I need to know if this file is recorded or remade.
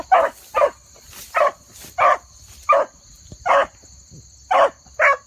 recorded